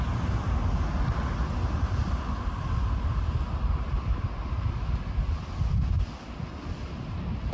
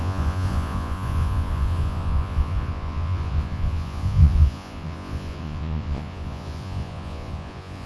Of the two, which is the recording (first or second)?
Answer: first